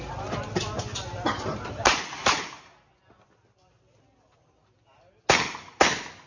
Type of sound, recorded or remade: recorded